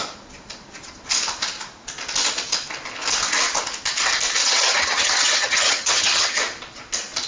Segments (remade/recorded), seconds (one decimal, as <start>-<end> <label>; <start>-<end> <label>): 0.0-4.4 recorded; 4.4-6.4 remade; 6.4-7.3 recorded